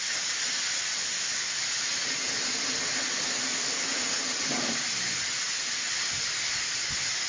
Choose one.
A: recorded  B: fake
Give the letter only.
A